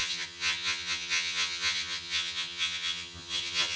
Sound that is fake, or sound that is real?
fake